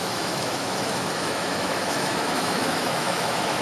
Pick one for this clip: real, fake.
fake